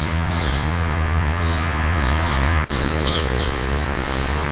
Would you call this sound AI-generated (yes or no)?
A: yes